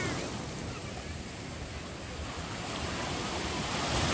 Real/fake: real